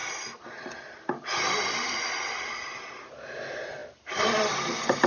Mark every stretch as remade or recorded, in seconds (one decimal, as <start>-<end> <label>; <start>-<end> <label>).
0.0-5.1 recorded